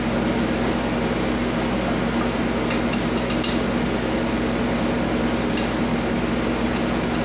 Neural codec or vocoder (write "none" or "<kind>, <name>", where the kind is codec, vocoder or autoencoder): none